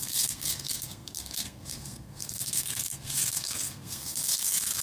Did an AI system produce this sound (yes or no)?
yes